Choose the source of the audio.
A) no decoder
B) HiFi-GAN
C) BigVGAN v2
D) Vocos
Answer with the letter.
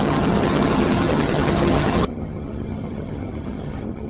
B